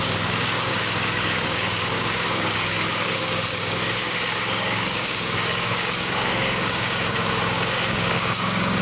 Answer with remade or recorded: remade